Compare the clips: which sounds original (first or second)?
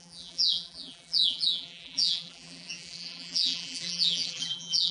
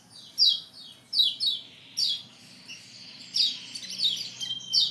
second